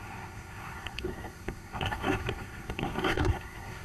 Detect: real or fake fake